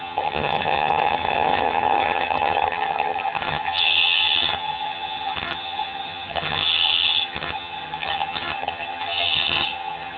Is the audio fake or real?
fake